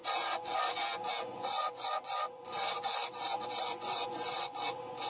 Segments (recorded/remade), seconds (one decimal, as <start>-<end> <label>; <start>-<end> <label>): 0.0-1.2 recorded; 1.2-3.0 remade; 3.0-3.6 recorded; 3.6-5.1 remade

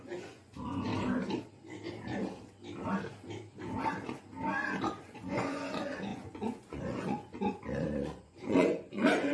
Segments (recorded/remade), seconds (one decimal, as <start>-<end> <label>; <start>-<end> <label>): 0.0-0.9 remade; 0.9-5.0 recorded; 5.0-9.3 remade